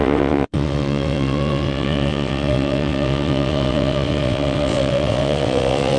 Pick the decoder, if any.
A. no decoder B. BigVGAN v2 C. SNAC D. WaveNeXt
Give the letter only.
D